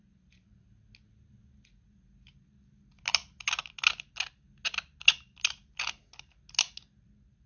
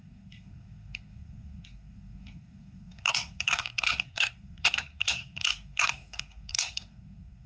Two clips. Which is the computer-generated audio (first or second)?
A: second